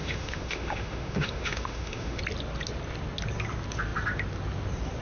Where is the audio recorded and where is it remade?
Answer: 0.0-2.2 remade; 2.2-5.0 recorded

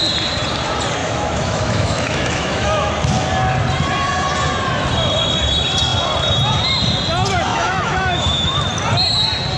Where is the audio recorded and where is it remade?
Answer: 0.0-1.0 recorded; 1.0-2.9 remade; 2.9-7.5 recorded; 7.5-8.6 remade; 8.6-9.6 recorded

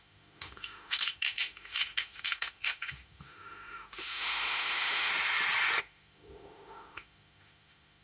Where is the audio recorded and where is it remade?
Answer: 0.0-5.1 remade; 5.1-5.8 recorded; 5.8-8.0 remade

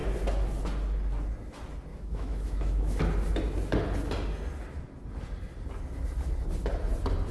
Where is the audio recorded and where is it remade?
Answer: 0.0-1.9 recorded; 1.9-3.0 remade; 3.0-7.3 recorded